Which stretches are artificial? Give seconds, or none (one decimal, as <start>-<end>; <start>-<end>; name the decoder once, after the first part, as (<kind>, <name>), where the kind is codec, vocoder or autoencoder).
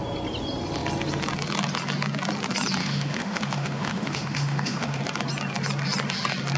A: 2.8-5.0 (autoencoder, DAC-VAE)